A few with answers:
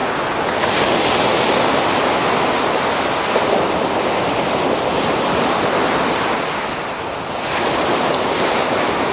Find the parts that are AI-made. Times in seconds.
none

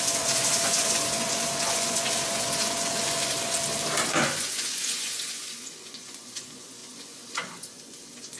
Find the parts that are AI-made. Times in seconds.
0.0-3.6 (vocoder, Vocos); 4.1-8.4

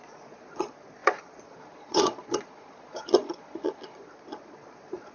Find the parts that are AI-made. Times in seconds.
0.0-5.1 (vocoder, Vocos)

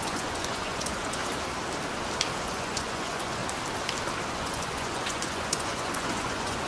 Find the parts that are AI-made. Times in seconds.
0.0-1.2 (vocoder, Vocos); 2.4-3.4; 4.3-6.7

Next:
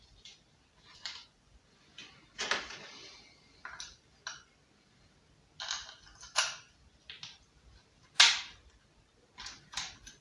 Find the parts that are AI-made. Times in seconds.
0.9-2.1 (vocoder, Vocos)

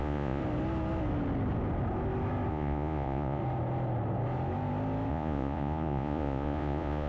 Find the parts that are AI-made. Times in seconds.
0.0-0.4 (vocoder, Vocos); 2.5-3.4; 5.1-7.1

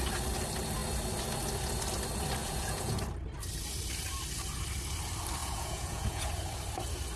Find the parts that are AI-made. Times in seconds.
2.4-3.0 (vocoder, Vocos); 5.4-6.3

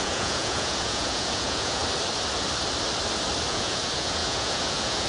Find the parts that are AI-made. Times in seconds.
0.0-1.8 (vocoder, Vocos); 3.5-5.1